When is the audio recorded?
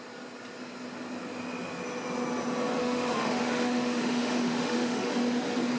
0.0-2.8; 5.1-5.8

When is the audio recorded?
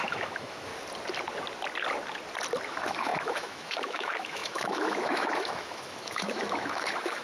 0.7-2.7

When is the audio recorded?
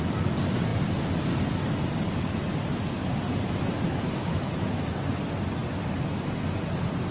0.0-4.2; 4.8-7.1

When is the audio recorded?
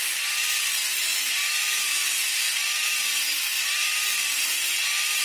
0.0-5.2